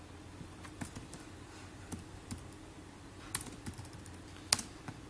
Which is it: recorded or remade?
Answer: recorded